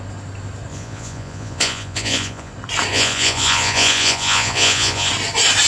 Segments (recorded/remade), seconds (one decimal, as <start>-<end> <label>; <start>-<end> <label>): 0.0-0.7 recorded; 0.7-2.5 remade; 2.5-2.9 recorded; 2.9-5.1 remade; 5.1-5.7 recorded